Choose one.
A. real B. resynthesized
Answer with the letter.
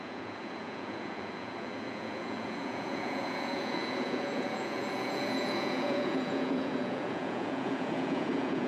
B